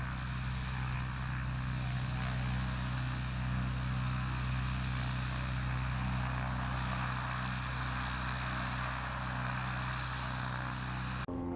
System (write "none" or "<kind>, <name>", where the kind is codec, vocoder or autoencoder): none